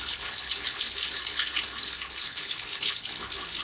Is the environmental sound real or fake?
fake